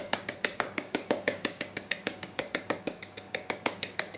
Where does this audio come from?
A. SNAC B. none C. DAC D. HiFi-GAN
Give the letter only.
C